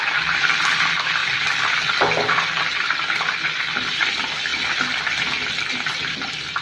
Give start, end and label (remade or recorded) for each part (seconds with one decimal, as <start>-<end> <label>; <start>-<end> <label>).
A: 0.0-6.6 recorded

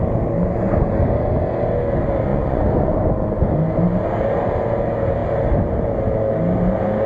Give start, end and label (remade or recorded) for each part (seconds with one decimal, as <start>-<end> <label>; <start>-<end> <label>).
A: 0.0-2.3 recorded; 2.3-2.9 remade; 2.9-7.1 recorded